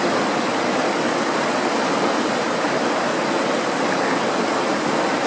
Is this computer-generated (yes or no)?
no